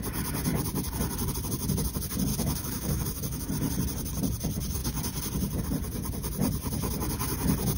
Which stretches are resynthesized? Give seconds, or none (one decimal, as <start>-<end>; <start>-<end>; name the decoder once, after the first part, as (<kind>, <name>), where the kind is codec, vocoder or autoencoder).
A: 2.3-3.5 (autoencoder, DAC-VAE)